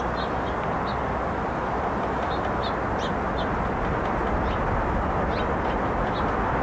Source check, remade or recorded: recorded